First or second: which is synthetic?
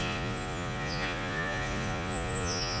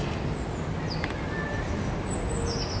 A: first